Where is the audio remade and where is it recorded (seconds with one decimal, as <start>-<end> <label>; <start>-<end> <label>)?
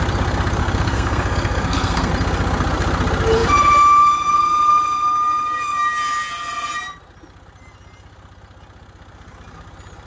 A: 0.0-0.6 recorded; 0.6-2.1 remade; 2.1-10.1 recorded